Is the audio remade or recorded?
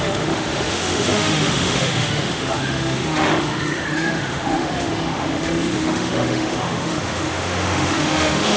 remade